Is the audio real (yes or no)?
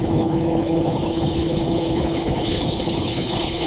no